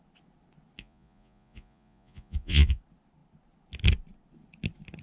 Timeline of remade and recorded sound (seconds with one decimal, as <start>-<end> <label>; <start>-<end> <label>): 0.0-0.8 recorded; 0.8-2.8 remade; 2.8-5.0 recorded

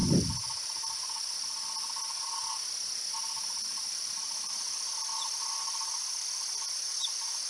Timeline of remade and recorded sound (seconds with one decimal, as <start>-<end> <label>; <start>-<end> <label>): 0.0-7.5 recorded

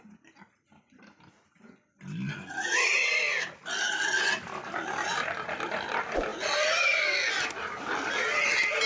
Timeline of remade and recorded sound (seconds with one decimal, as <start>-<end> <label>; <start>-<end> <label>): 0.0-8.9 recorded

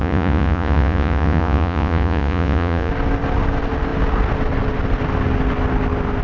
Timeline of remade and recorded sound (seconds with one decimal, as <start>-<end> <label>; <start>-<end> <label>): 0.0-2.9 remade; 2.9-6.2 recorded

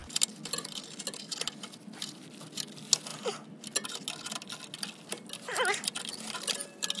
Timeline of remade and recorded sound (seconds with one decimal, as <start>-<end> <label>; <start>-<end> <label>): 0.0-7.0 recorded

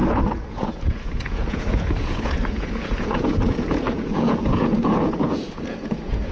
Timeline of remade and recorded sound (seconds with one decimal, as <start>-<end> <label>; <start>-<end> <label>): 0.0-6.3 remade

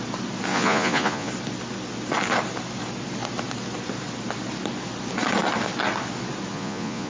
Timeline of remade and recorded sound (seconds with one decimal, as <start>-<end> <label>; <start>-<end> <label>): 0.0-0.5 recorded; 0.5-1.3 remade; 1.3-6.5 recorded; 6.5-7.1 remade